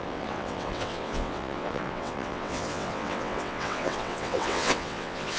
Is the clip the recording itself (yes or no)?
no